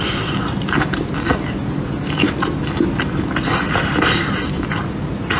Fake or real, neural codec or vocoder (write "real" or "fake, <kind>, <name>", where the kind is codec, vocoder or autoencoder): real